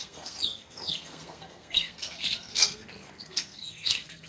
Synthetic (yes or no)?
yes